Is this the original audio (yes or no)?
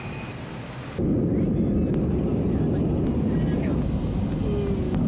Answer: yes